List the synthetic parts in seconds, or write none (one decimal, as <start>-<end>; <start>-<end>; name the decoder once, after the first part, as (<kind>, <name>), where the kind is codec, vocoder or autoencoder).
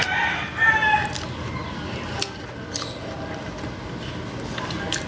none